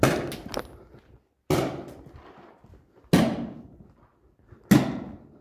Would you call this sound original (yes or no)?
yes